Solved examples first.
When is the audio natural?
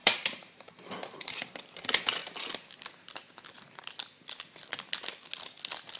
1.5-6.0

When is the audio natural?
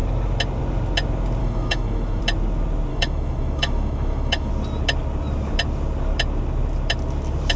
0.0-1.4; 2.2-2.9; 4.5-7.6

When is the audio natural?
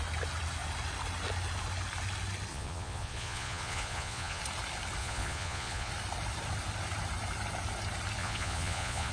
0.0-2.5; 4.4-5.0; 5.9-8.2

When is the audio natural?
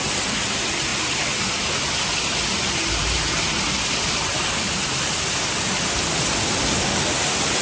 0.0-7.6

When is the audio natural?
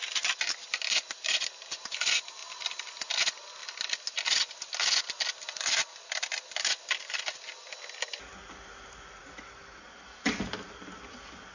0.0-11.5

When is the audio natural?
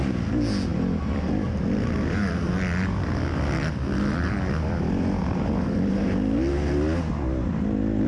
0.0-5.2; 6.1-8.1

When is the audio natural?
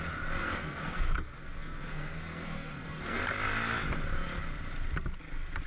0.0-0.4; 3.2-5.7